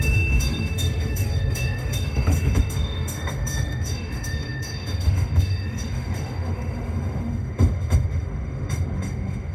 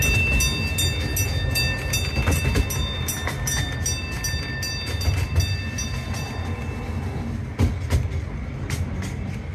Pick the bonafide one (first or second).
second